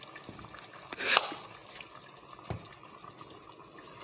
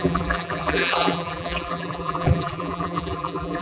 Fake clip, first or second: second